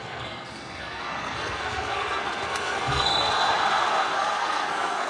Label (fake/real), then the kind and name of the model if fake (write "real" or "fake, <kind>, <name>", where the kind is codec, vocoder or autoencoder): fake, codec, SNAC